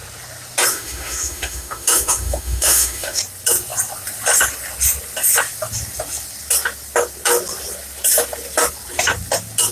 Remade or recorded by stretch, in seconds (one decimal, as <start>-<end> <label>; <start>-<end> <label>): 0.0-0.7 recorded; 0.7-3.2 remade; 3.2-9.7 recorded